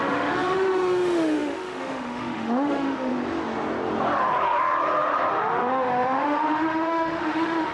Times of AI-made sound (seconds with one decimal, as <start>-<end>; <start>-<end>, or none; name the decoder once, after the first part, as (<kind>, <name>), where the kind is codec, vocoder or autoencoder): 0.0-3.1 (autoencoder, DAC-VAE); 5.3-7.7